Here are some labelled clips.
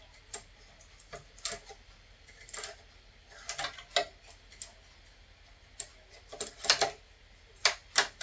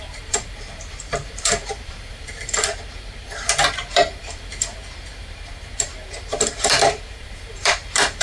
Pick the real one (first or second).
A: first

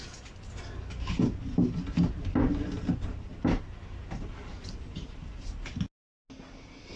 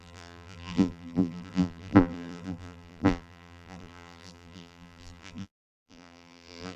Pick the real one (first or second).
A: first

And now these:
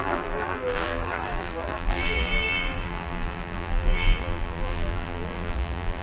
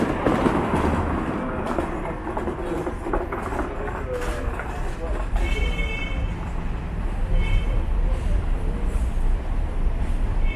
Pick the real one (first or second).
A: second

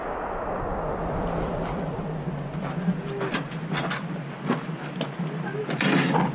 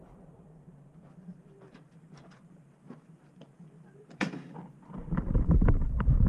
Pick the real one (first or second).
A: first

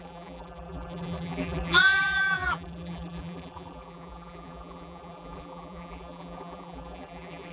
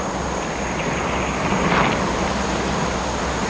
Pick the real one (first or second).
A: second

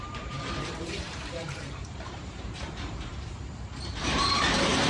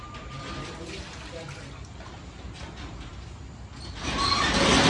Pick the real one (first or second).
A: second